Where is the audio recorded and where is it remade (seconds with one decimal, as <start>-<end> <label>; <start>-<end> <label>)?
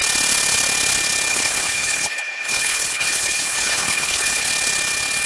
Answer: 0.0-1.3 recorded; 1.3-4.5 remade; 4.5-5.3 recorded